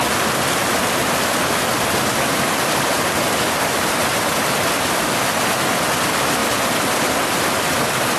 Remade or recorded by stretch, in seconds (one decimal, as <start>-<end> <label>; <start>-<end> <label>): 0.0-8.2 recorded